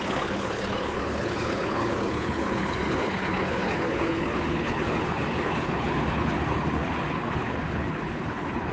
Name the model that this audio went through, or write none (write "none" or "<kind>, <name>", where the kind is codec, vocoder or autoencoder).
codec, HILCodec